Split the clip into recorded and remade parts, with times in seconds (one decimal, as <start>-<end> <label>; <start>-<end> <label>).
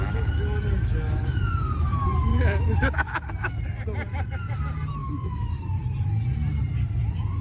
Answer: 0.0-2.3 recorded; 2.3-3.3 remade; 3.3-5.0 recorded; 5.0-5.6 remade; 5.6-7.4 recorded